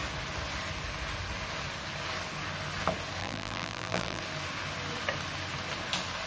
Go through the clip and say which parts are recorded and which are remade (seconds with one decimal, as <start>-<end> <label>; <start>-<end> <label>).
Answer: 0.0-3.2 recorded; 3.2-4.2 remade; 4.2-6.3 recorded